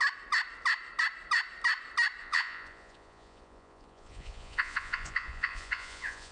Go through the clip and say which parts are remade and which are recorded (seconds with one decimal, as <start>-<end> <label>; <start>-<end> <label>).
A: 0.0-2.2 recorded; 2.2-6.3 remade

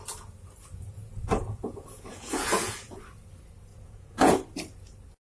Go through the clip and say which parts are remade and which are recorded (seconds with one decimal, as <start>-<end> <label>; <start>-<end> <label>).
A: 0.0-1.0 recorded; 1.0-3.0 remade; 3.0-3.7 recorded; 3.7-4.3 remade; 4.3-5.3 recorded

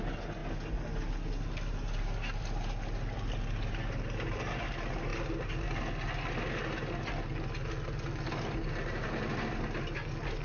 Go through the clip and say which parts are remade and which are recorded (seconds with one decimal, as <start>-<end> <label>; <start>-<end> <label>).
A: 0.0-10.4 recorded